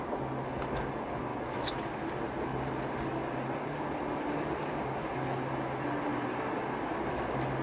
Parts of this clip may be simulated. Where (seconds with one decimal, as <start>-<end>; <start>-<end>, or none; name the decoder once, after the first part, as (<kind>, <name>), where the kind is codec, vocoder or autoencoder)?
none